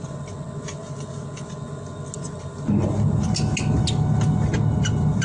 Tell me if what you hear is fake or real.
real